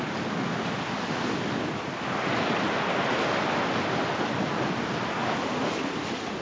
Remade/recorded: recorded